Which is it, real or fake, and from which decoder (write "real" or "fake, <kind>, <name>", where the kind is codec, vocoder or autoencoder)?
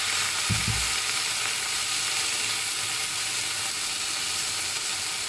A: real